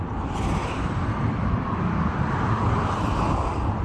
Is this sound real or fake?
real